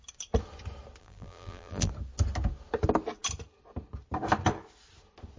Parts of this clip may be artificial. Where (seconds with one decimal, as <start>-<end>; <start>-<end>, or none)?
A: 1.0-1.9